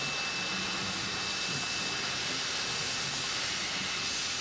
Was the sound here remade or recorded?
recorded